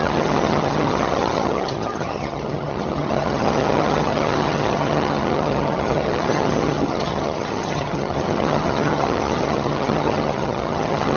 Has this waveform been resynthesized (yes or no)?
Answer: yes